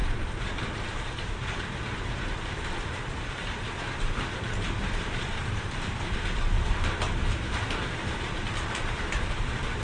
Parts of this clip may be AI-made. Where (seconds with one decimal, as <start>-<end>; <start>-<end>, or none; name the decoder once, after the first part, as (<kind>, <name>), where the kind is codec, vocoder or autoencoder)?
0.0-9.8 (vocoder, BigVGAN v2)